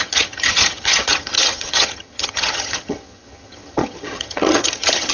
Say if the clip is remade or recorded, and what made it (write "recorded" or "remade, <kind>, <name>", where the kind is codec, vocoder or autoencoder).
remade, vocoder, HiFi-GAN